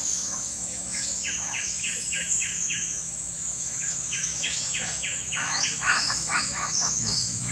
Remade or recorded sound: remade